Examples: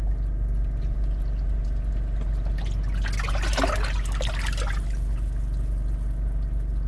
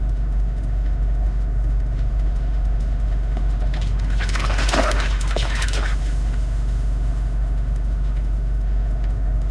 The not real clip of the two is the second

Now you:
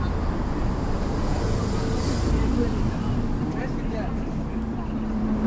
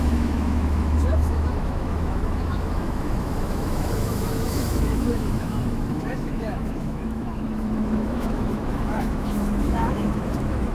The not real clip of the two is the second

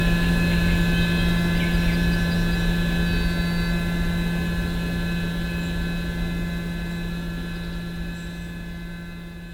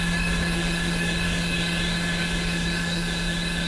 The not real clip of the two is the second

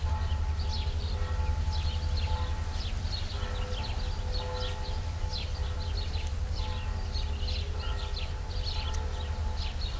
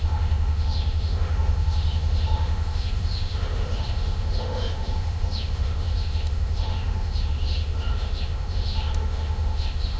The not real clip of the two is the second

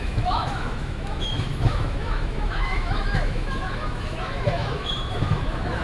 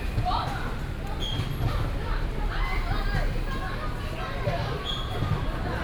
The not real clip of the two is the first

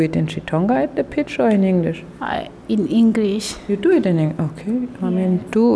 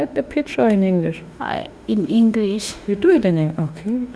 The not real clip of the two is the second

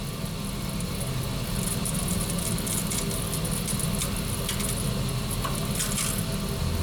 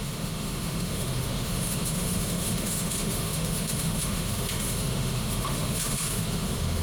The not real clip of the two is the second